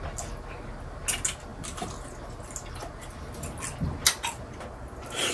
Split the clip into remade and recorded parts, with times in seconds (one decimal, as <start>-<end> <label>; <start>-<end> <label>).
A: 0.0-5.3 recorded